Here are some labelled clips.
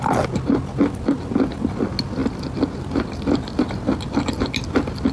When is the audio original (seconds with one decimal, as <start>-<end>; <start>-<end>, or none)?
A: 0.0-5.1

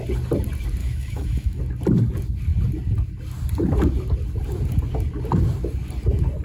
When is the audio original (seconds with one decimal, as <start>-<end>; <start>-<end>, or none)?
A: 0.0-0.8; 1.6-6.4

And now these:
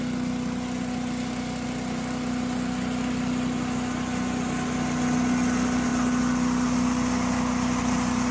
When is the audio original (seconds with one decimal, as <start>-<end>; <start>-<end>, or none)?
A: 0.0-8.3

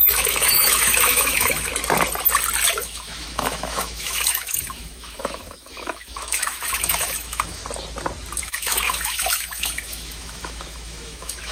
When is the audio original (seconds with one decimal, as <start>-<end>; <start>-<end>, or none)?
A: 1.7-2.8; 7.6-8.4

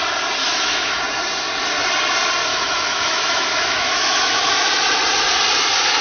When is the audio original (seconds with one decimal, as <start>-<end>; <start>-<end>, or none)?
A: 0.0-0.4; 1.0-2.5; 4.5-6.0